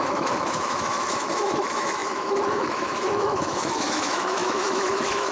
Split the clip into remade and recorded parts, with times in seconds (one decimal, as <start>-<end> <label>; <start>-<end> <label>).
0.0-5.3 remade